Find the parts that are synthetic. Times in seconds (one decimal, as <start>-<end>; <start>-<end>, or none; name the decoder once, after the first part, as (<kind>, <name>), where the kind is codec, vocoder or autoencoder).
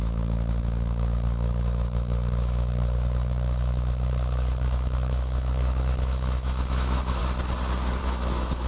0.0-7.2 (autoencoder, DAC-VAE); 8.0-8.7